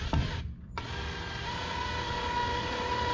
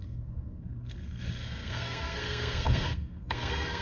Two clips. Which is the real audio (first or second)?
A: first